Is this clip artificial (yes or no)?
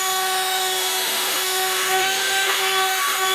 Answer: yes